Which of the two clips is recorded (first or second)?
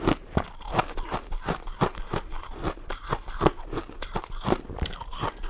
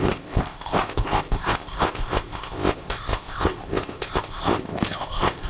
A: first